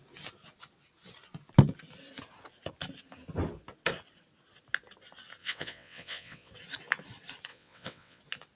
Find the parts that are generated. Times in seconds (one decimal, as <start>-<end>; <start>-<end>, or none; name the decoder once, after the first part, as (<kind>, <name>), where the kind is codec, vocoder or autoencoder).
5.4-6.5 (vocoder, WaveNeXt); 7.5-8.2